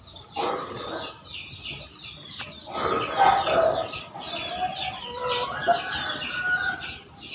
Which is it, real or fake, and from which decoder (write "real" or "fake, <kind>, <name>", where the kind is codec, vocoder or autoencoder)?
real